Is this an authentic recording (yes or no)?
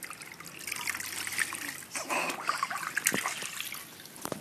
yes